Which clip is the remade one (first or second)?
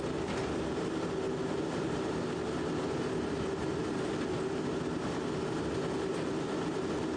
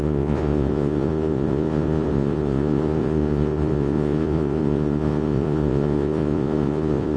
second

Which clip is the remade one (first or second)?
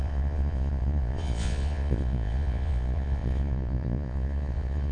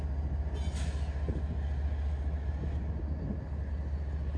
first